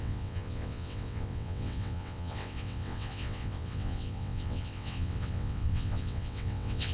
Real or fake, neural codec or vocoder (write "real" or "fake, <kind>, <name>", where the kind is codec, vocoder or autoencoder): fake, vocoder, WaveNeXt